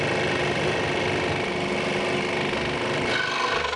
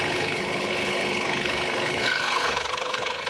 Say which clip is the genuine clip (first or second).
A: first